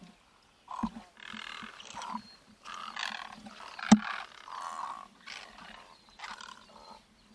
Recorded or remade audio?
recorded